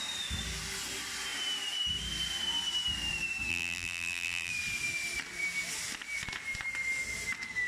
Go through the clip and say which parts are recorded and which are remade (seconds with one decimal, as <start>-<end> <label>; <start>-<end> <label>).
0.0-3.5 recorded; 3.5-4.5 remade; 4.5-7.7 recorded